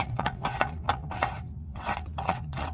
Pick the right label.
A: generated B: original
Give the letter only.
A